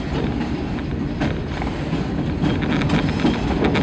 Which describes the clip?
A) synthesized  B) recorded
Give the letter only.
B